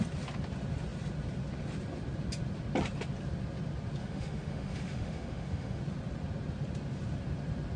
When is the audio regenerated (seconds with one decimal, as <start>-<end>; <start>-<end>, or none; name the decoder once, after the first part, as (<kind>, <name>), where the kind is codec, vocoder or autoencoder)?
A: 4.0-5.8 (autoencoder, DAC-VAE)